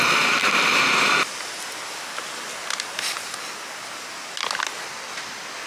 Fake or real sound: real